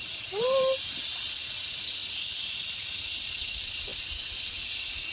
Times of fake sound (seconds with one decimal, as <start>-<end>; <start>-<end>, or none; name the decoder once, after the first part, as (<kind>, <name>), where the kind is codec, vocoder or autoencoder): 0.0-1.4 (vocoder, BigVGAN v2); 2.0-3.3; 3.9-4.5